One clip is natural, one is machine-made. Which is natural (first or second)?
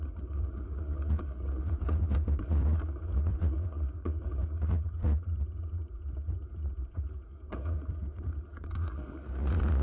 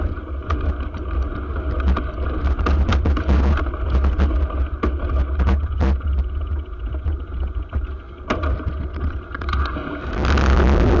second